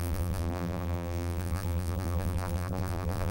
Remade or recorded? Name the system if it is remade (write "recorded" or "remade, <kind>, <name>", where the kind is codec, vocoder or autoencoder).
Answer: remade, vocoder, BigVGAN v2